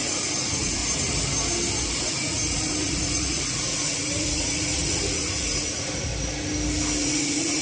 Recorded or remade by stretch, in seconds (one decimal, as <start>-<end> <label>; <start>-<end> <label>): 0.0-0.8 remade; 0.8-1.8 recorded; 1.8-6.1 remade; 6.1-7.0 recorded; 7.0-7.6 remade